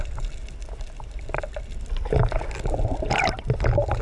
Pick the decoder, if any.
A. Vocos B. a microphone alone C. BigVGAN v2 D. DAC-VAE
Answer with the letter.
C